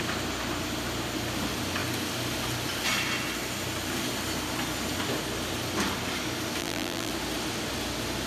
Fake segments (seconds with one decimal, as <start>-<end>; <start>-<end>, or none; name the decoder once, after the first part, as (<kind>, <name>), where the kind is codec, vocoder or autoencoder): 6.6-7.1 (vocoder, BigVGAN v2)